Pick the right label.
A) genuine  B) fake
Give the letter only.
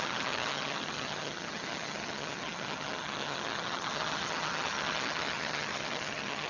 B